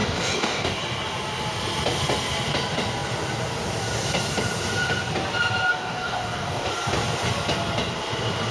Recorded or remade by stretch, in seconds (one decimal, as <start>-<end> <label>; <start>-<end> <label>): 0.0-0.8 remade; 0.8-5.7 recorded; 5.7-6.7 remade; 6.7-8.5 recorded